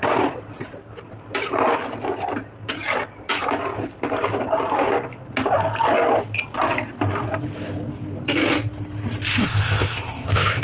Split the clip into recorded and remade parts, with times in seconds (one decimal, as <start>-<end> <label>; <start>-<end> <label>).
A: 0.0-9.4 recorded; 9.4-10.6 remade